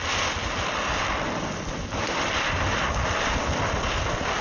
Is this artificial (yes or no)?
no